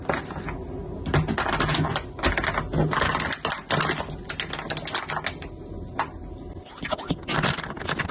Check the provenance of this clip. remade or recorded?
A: recorded